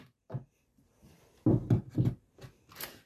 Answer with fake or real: real